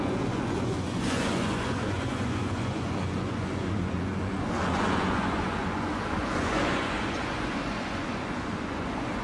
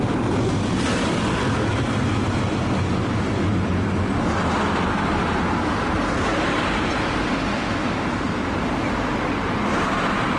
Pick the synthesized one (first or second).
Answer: first